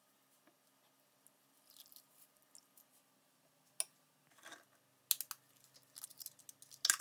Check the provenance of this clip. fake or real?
real